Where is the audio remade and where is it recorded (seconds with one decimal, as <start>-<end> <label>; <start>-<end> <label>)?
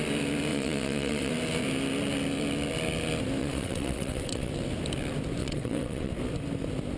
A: 0.0-0.5 recorded; 0.5-1.3 remade; 1.3-3.4 recorded; 3.4-4.5 remade; 4.5-5.4 recorded; 5.4-6.1 remade; 6.1-7.0 recorded